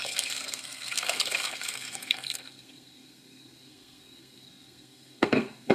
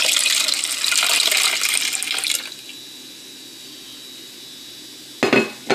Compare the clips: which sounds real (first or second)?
second